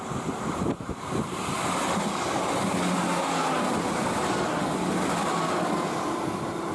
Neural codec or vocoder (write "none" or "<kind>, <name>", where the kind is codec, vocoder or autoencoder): none